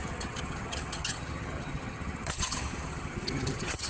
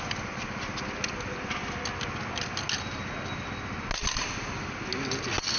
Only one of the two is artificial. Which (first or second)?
first